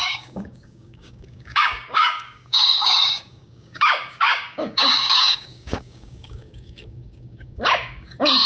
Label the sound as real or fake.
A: fake